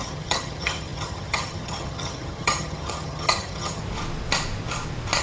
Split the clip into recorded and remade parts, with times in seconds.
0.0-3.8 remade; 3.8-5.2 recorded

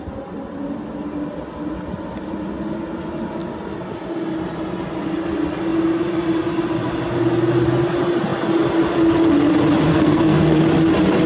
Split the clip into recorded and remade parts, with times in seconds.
0.0-9.9 recorded; 9.9-10.6 remade; 10.6-11.3 recorded

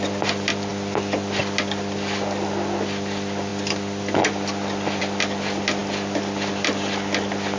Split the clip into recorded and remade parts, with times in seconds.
0.0-7.6 recorded

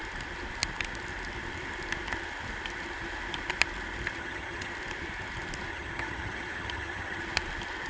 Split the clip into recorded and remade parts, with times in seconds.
0.0-4.2 recorded; 4.2-4.7 remade; 4.7-5.7 recorded; 5.7-7.2 remade; 7.2-7.9 recorded

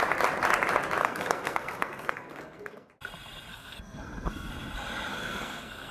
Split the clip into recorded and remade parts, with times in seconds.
0.0-1.0 recorded; 1.0-2.9 remade; 2.9-3.5 recorded; 3.5-4.5 remade; 4.5-5.1 recorded; 5.1-5.9 remade

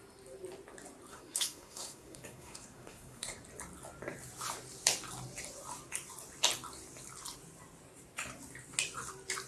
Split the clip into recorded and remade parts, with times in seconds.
0.0-1.1 recorded; 1.1-3.4 remade; 3.4-9.5 recorded

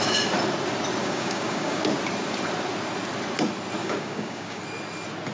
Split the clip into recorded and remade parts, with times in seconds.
0.0-1.0 recorded; 1.0-1.8 remade; 1.8-3.8 recorded; 3.8-4.6 remade; 4.6-5.3 recorded

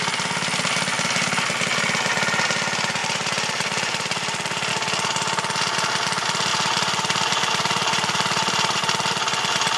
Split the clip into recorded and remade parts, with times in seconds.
0.0-3.0 recorded; 3.0-4.7 remade; 4.7-6.5 recorded; 6.5-8.8 remade; 8.8-9.8 recorded